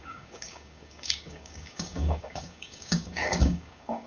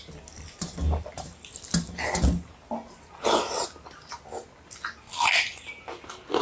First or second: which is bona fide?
second